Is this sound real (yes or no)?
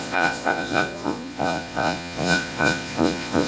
no